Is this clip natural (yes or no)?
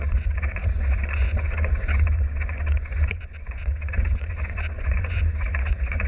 no